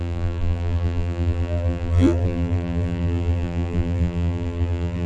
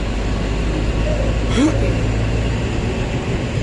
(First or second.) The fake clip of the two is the first